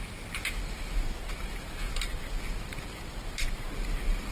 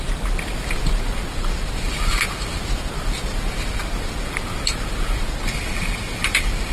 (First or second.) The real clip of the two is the first